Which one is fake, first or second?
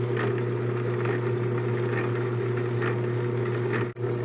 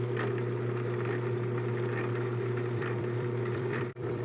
second